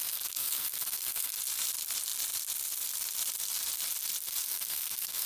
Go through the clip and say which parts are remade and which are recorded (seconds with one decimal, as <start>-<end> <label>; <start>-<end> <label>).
0.0-1.4 remade; 1.4-4.5 recorded; 4.5-5.3 remade